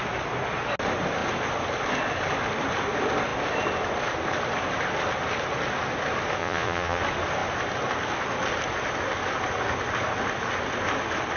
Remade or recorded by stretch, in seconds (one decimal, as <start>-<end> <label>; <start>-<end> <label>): 0.0-6.4 recorded; 6.4-7.0 remade; 7.0-11.4 recorded